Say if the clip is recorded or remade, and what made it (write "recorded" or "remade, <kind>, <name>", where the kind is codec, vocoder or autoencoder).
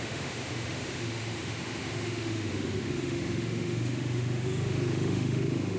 remade, autoencoder, DAC-VAE